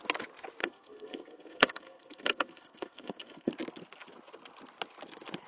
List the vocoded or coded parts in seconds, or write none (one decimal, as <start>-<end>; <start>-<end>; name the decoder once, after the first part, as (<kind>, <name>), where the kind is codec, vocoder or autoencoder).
0.6-3.5 (codec, SNAC)